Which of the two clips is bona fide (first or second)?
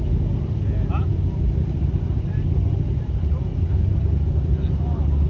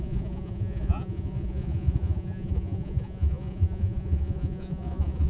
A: first